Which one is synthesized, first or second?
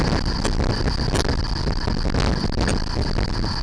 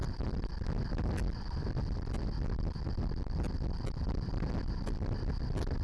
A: second